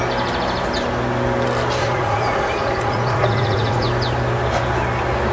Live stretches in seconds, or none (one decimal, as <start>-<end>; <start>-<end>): 0.0-1.8; 3.9-5.3